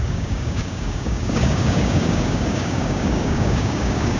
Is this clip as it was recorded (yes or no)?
no